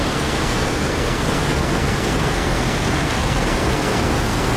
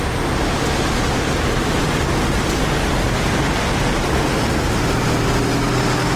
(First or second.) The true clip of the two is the second